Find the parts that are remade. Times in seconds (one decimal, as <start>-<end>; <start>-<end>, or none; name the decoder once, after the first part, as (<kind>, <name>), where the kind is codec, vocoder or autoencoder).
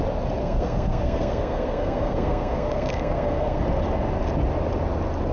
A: 0.4-3.6 (codec, SNAC)